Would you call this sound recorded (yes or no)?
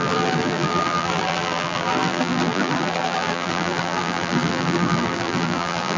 no